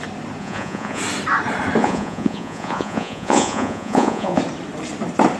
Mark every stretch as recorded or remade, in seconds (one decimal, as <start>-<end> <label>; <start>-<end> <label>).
0.0-0.4 recorded; 0.4-1.0 remade; 1.0-1.8 recorded; 1.8-4.4 remade; 4.4-5.4 recorded